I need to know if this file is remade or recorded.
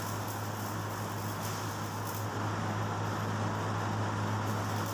recorded